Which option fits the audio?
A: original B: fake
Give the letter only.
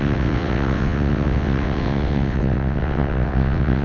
B